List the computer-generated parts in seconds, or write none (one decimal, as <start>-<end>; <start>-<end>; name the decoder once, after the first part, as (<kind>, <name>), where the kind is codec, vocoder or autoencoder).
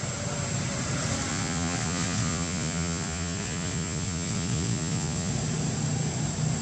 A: 1.3-5.3 (vocoder, Vocos)